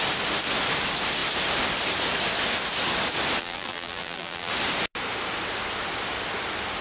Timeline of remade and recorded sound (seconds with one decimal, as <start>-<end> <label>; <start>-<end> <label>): 0.0-3.4 recorded; 3.4-4.5 remade; 4.5-6.8 recorded